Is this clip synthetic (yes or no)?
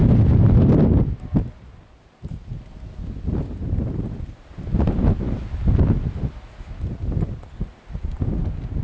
no